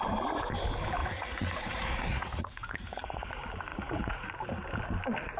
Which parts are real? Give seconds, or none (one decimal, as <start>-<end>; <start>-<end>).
0.0-1.0; 3.3-3.7; 4.3-5.4